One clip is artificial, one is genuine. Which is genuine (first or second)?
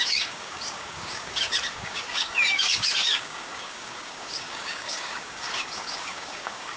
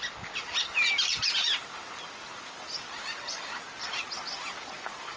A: second